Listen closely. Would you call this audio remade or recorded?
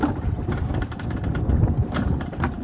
recorded